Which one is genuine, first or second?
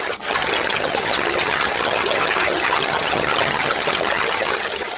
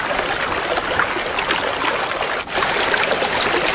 second